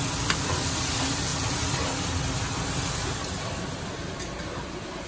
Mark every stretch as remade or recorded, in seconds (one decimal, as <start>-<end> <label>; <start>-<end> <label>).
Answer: 0.0-1.3 remade; 1.3-4.4 recorded; 4.4-5.1 remade